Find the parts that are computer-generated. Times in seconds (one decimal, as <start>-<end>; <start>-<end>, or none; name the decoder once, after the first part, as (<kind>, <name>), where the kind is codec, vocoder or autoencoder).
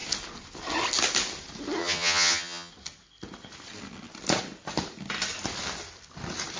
1.8-2.7 (vocoder, HiFi-GAN)